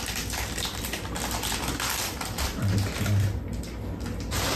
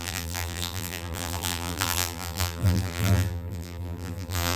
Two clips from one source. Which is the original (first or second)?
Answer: first